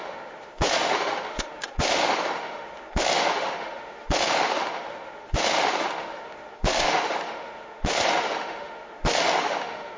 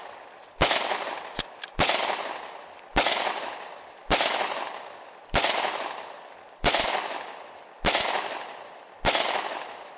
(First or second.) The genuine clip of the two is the second